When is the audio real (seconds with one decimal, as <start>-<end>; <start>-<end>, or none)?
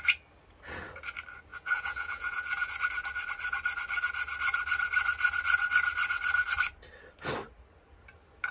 0.0-1.5; 2.7-8.5